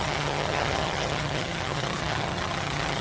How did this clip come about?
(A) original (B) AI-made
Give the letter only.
B